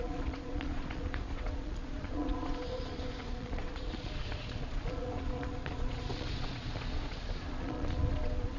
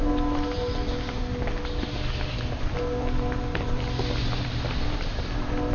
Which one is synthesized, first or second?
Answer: first